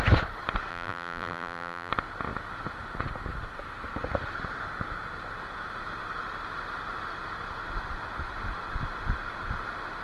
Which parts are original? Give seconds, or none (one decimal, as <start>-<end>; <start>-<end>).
0.0-0.7; 1.9-10.0